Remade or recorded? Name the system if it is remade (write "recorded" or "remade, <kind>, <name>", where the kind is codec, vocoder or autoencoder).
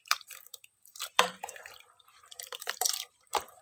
remade, vocoder, BigVGAN v2